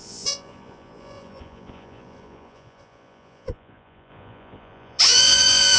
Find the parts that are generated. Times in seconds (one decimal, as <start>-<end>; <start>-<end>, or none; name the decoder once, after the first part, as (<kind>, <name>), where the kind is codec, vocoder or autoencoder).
0.0-5.8 (vocoder, Vocos)